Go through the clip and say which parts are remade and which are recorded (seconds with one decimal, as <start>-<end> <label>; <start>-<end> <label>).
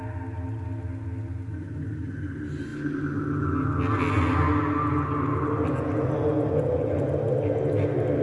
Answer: 0.0-8.2 recorded